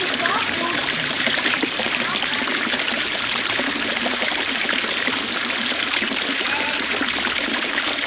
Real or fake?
fake